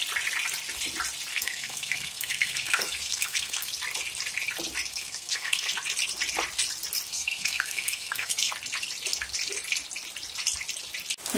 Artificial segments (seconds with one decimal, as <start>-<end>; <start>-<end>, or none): 1.3-3.7; 4.9-5.7; 7.1-8.5